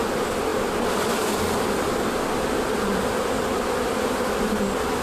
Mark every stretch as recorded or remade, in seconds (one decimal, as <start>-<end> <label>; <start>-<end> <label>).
0.0-5.0 recorded

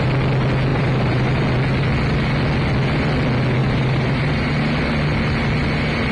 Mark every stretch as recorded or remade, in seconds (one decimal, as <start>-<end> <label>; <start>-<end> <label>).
0.0-0.7 recorded; 0.7-1.3 remade; 1.3-3.6 recorded; 3.6-4.5 remade; 4.5-6.1 recorded

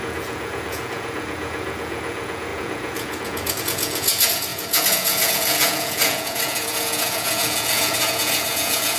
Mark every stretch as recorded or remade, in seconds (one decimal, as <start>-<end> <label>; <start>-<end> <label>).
0.0-9.0 remade

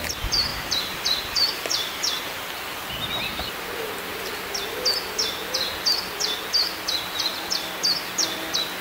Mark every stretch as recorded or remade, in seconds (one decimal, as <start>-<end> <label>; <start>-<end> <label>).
0.0-0.5 recorded; 0.5-2.2 remade; 2.2-7.3 recorded; 7.3-7.8 remade; 7.8-8.8 recorded

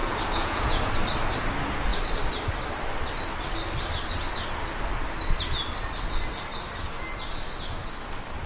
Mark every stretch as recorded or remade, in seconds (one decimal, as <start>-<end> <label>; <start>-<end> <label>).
0.0-0.9 remade; 0.9-8.5 recorded